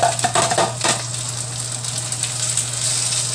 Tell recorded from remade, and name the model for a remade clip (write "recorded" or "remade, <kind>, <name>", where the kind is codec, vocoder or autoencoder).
recorded